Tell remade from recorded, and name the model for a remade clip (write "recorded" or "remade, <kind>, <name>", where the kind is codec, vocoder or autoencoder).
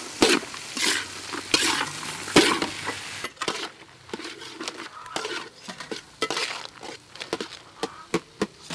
recorded